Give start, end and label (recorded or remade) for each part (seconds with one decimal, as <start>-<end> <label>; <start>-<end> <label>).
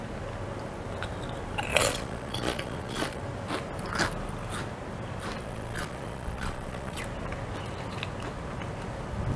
0.0-1.7 recorded; 1.7-3.2 remade; 3.2-5.4 recorded; 5.4-7.0 remade; 7.0-9.4 recorded